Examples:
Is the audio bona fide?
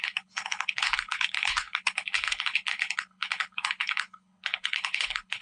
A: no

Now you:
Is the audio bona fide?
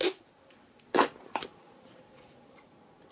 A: yes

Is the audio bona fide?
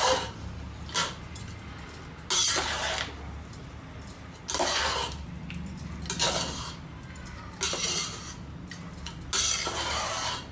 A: yes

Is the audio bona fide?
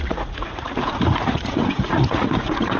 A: no